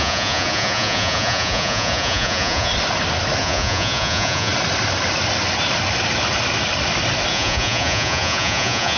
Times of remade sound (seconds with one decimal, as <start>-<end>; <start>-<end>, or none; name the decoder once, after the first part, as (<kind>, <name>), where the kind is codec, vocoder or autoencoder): 0.0-2.7 (vocoder, Vocos); 3.4-4.5; 7.3-9.0